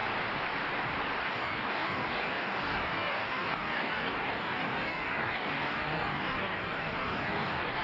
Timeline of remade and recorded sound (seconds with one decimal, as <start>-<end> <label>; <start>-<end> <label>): 0.0-1.2 recorded; 1.2-7.8 remade